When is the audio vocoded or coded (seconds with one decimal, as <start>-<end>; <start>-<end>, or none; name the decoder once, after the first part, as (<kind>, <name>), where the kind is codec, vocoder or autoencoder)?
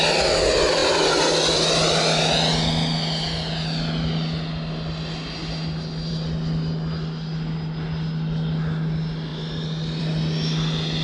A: none